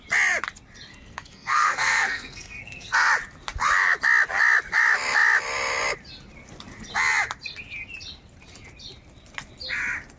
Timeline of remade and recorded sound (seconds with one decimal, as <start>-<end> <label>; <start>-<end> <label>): 0.0-0.9 recorded; 0.9-3.1 remade; 3.1-10.2 recorded